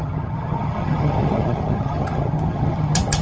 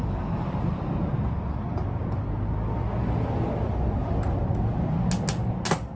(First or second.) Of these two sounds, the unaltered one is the second